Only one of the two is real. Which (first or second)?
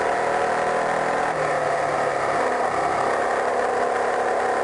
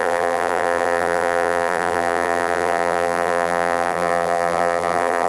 first